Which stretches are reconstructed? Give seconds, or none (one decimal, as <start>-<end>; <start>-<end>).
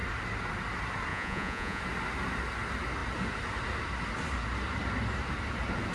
1.1-1.8